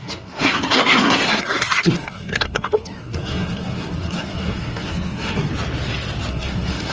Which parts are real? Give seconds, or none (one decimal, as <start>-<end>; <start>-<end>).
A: 5.5-6.3